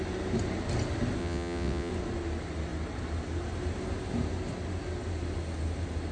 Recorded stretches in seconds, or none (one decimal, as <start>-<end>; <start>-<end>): 0.0-1.2; 1.9-6.1